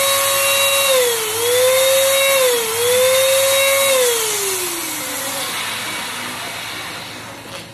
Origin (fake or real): real